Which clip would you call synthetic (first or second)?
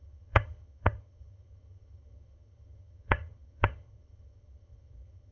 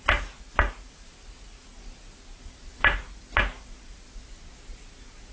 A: first